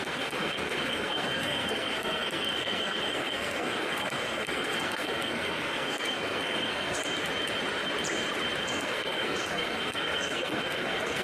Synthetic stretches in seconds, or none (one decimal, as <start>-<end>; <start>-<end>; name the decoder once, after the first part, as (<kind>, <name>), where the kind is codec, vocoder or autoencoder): 0.0-7.0 (codec, SNAC); 8.6-11.2